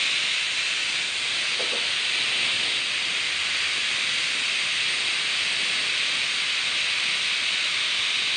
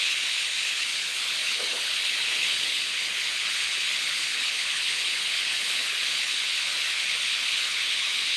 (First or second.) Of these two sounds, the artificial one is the second